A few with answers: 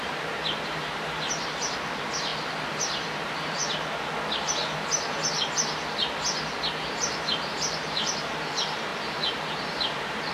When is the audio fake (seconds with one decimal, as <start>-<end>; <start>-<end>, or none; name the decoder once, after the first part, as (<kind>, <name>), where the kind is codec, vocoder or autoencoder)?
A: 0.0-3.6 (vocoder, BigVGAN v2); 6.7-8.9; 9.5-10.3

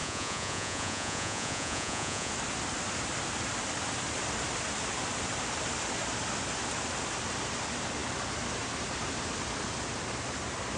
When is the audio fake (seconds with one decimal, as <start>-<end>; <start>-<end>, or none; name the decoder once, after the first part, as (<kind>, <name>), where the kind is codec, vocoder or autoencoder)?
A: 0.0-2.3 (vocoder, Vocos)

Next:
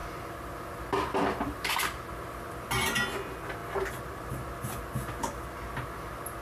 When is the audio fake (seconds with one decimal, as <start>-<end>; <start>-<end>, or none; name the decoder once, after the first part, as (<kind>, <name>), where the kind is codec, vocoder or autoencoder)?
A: 0.0-1.7 (vocoder, BigVGAN v2)

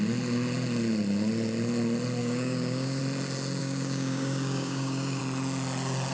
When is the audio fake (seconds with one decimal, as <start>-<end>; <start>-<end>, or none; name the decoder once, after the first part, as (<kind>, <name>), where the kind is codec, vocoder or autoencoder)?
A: 2.2-3.0 (codec, DAC); 3.6-5.2